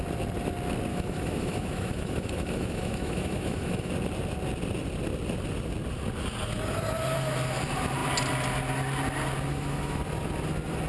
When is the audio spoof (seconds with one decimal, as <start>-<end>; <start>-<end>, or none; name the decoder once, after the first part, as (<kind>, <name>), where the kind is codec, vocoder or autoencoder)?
0.9-3.9 (autoencoder, DAC-VAE); 9.5-10.0